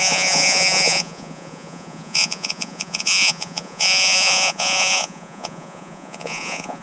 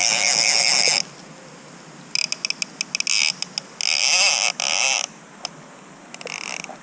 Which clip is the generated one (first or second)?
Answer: first